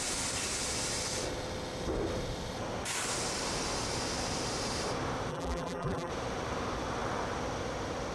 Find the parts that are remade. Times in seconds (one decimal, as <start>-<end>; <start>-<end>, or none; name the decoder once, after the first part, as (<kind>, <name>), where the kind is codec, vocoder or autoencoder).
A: 5.3-6.1 (vocoder, BigVGAN v2)